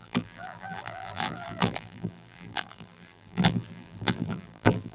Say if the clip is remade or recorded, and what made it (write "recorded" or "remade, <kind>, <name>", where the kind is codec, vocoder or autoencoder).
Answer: remade, vocoder, BigVGAN v2